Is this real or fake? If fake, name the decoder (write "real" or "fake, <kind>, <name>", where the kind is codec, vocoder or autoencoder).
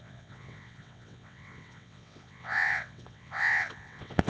fake, vocoder, WaveNeXt